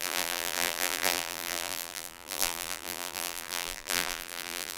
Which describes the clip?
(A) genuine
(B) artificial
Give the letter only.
B